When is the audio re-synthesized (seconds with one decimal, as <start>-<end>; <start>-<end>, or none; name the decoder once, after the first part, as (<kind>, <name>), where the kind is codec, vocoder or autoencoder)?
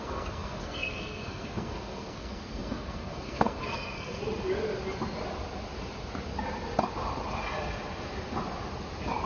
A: 0.0-4.2 (codec, SNAC)